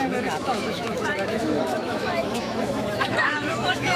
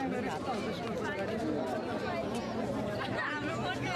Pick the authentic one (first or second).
second